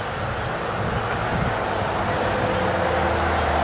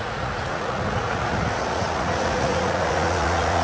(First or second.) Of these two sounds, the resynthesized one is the second